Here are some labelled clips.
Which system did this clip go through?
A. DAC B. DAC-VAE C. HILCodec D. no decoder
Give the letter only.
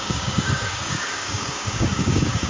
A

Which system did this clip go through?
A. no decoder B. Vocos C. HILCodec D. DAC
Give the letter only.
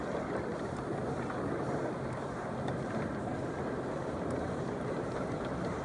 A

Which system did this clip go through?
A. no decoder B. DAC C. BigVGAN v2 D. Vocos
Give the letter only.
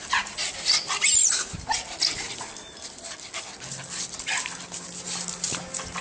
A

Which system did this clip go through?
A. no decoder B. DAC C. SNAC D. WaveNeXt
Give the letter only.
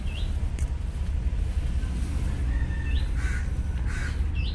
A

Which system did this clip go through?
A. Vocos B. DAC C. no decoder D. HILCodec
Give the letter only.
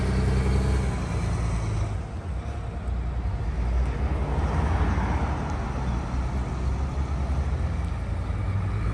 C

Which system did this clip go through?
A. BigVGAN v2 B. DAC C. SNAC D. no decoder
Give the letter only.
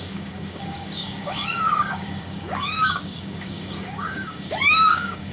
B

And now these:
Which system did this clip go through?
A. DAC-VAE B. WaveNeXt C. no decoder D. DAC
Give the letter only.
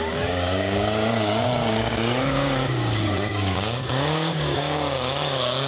D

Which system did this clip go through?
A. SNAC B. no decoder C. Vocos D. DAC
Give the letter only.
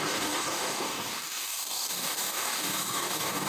D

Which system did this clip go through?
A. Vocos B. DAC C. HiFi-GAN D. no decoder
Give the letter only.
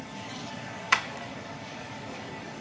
B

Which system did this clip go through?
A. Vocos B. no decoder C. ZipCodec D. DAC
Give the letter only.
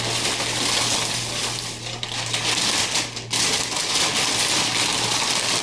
B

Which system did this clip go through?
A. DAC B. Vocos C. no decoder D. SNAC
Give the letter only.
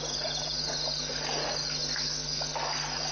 C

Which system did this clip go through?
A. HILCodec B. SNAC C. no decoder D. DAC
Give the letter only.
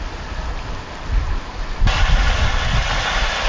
C